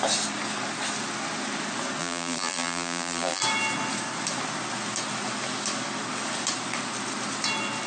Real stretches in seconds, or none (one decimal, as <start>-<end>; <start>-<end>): 0.0-2.0; 3.4-7.9